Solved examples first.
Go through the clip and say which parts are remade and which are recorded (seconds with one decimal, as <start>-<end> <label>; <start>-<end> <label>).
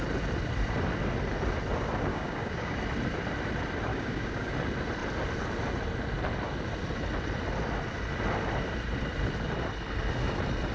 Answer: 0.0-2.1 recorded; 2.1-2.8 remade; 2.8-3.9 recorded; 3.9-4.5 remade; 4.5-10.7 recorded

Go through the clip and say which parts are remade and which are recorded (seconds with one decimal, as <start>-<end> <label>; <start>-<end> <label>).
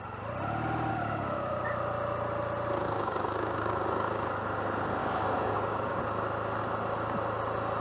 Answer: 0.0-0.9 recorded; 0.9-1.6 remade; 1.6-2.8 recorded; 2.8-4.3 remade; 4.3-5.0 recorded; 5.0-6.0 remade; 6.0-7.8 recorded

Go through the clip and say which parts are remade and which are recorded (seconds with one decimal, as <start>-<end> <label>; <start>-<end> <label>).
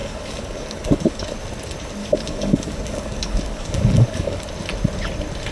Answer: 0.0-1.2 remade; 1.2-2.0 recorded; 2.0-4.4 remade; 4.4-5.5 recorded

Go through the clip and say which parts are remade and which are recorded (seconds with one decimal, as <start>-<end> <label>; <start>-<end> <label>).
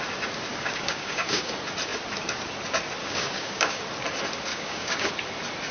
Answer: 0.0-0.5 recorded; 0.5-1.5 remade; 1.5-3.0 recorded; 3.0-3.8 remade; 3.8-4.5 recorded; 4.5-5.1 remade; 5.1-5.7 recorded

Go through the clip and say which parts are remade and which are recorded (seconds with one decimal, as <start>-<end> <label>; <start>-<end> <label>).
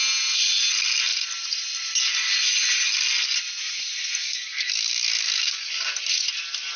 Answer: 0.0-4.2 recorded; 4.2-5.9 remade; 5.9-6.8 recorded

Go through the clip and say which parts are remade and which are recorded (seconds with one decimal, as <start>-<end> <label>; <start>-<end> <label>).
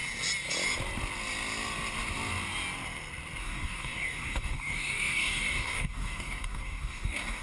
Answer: 0.0-3.4 recorded; 3.4-7.4 remade